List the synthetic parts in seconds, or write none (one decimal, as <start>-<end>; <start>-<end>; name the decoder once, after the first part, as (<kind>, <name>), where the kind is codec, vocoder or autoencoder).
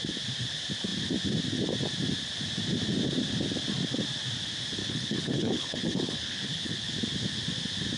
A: 4.8-6.9 (codec, HILCodec)